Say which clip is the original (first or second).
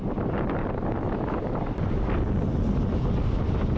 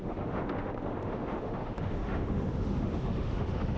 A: first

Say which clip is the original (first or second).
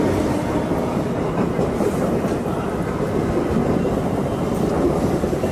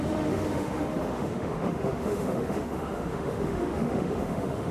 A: first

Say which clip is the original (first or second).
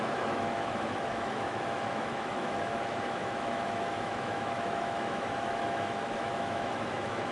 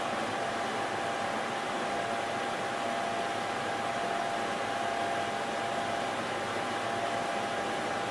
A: second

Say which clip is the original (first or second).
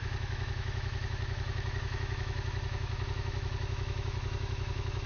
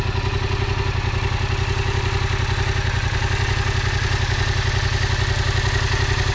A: second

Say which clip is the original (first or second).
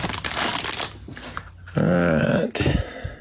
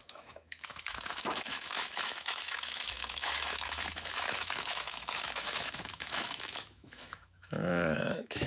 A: first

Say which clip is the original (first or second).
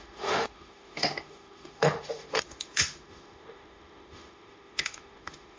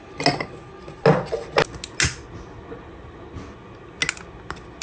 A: second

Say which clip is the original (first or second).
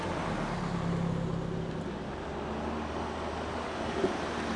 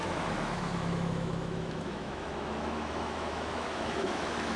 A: first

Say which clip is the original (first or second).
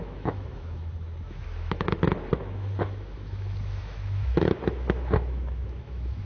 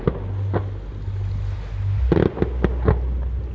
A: second